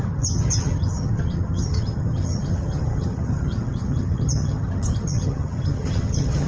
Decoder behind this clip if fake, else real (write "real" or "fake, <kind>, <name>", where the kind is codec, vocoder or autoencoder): fake, vocoder, HiFi-GAN